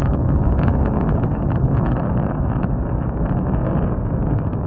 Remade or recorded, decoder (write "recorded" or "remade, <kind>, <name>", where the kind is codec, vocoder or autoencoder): remade, codec, DAC